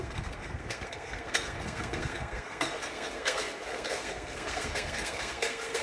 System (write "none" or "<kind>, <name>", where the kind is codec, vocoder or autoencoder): codec, SNAC